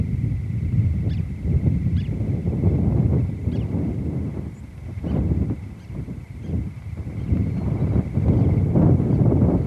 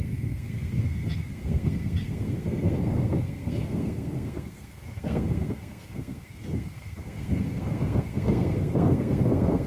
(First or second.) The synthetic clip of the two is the second